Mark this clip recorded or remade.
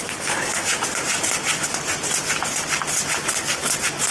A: recorded